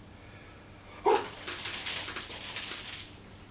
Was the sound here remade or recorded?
recorded